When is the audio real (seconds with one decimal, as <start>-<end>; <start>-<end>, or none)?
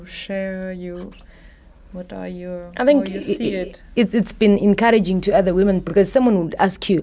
0.0-7.0